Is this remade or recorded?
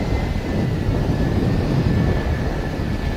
recorded